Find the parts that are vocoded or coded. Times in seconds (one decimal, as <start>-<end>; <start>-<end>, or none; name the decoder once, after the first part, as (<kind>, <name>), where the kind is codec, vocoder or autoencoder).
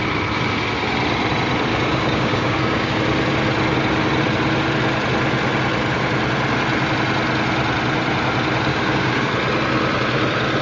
1.7-3.0 (codec, DAC); 8.7-9.3